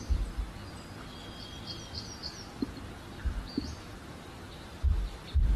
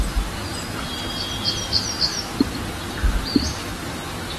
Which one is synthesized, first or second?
first